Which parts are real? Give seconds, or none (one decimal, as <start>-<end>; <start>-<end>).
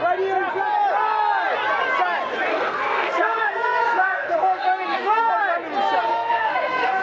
0.0-2.5; 5.3-6.1